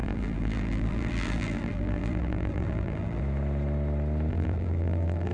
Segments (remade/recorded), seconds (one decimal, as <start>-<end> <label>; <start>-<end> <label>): 0.0-3.2 remade; 3.2-4.3 recorded; 4.3-5.3 remade